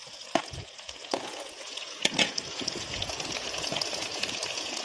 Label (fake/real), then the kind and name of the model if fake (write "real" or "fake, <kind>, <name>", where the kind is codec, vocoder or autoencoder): fake, vocoder, Vocos